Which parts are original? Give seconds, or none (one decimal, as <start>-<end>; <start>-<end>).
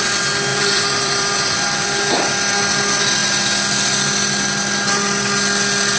0.0-0.5; 2.3-6.0